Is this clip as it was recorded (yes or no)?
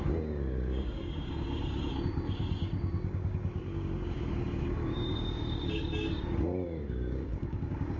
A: no